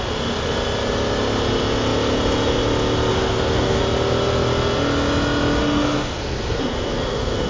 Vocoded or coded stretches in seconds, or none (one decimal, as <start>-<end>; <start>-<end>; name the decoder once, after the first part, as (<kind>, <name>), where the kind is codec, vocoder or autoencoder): 3.1-3.8 (codec, SNAC); 5.6-7.5